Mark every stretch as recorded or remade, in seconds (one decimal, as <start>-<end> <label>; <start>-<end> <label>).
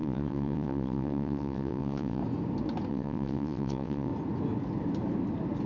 0.0-2.2 remade; 2.2-2.9 recorded; 2.9-4.1 remade; 4.1-5.7 recorded